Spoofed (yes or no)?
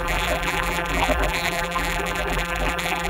yes